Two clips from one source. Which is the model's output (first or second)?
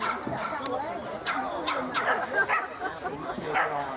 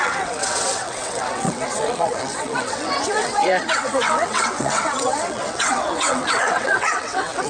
second